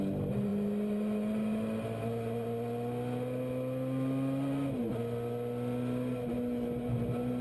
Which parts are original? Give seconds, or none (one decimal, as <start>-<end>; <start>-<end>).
0.0-7.4